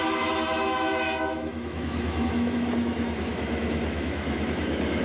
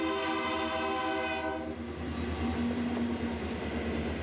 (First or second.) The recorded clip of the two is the second